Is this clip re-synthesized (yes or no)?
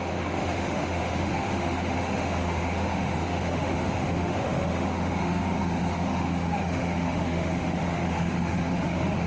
yes